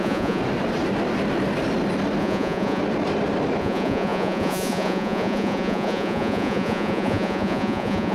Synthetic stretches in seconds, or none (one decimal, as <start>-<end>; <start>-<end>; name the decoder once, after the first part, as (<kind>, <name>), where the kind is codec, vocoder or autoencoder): 0.0-0.4 (vocoder, Vocos); 2.2-2.8; 3.6-8.1